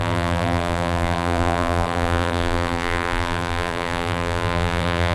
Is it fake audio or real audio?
fake